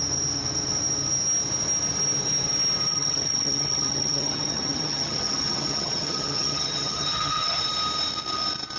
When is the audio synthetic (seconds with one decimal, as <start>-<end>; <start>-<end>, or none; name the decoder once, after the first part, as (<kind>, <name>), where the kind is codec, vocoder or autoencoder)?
2.9-7.6 (vocoder, HiFi-GAN)